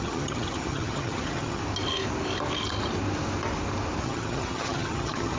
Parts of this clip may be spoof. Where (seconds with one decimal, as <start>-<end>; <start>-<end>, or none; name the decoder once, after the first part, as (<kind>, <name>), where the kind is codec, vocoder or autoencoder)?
0.0-1.6 (vocoder, HiFi-GAN); 4.0-5.4